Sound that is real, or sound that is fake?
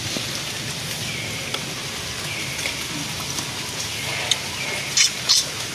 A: real